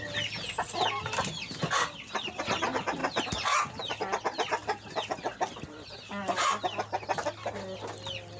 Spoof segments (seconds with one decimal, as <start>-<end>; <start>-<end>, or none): none